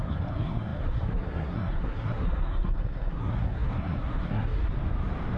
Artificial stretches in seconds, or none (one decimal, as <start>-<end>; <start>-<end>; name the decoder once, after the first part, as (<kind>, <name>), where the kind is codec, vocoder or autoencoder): 0.0-4.7 (codec, SNAC)